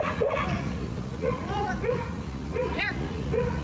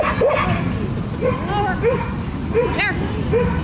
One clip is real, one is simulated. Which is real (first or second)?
second